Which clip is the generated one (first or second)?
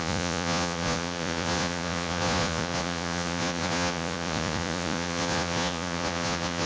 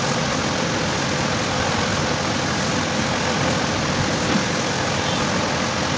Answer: first